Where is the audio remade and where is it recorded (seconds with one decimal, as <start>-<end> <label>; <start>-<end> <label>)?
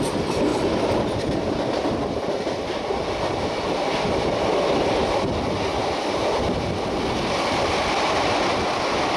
0.0-9.2 recorded